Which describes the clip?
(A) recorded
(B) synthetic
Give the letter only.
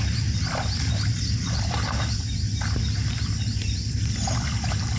A